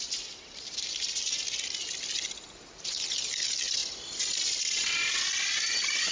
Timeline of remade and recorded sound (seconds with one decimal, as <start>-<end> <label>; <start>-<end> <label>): 0.0-6.1 recorded